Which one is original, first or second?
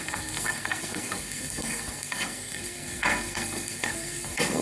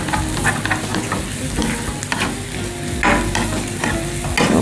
second